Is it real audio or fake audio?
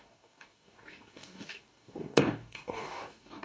fake